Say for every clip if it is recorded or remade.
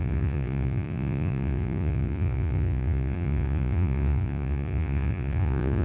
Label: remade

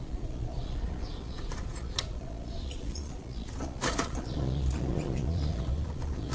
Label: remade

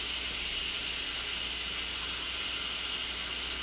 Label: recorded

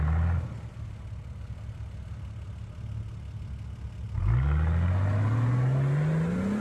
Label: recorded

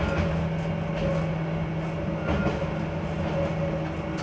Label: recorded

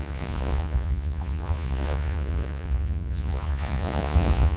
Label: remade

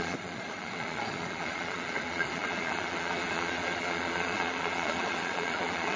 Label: remade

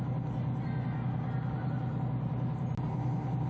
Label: recorded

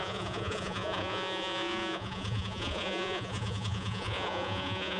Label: remade